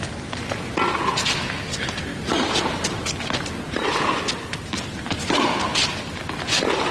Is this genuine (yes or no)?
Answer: yes